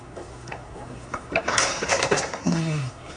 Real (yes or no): no